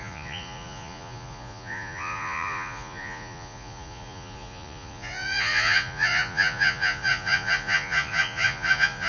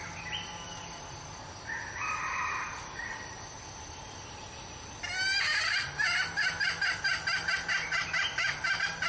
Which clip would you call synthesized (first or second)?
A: first